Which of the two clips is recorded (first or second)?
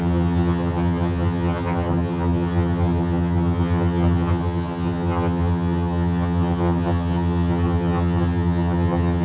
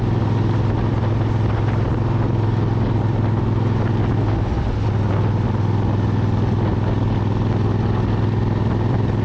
second